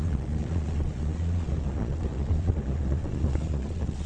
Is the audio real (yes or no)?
no